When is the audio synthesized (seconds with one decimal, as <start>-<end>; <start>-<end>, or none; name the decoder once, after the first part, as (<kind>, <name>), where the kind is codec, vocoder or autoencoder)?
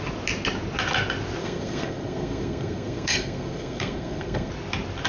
1.4-4.5 (codec, SNAC)